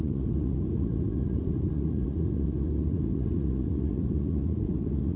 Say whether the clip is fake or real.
fake